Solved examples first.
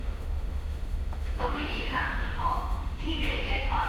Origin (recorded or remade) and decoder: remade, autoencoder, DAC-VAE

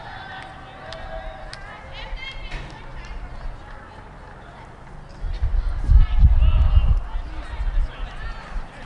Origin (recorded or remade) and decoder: recorded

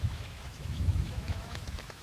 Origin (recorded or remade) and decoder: remade, autoencoder, DAC-VAE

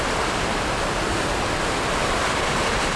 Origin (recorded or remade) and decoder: recorded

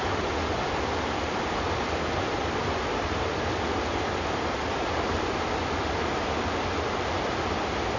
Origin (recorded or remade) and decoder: recorded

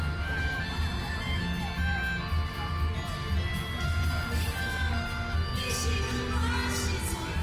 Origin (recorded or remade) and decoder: recorded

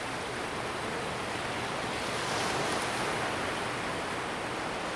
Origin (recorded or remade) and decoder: recorded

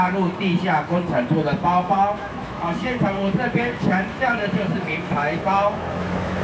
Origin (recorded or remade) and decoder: remade, autoencoder, DAC-VAE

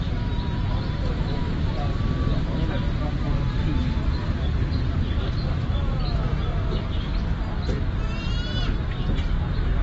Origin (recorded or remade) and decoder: recorded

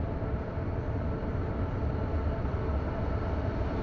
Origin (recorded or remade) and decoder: recorded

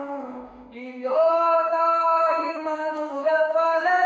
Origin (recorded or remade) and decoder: remade, autoencoder, DAC-VAE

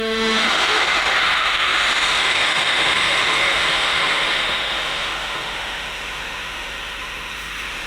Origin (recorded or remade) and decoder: remade, autoencoder, DAC-VAE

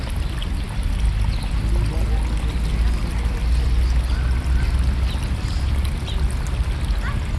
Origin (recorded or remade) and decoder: recorded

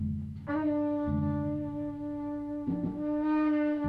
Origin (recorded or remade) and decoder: remade, autoencoder, DAC-VAE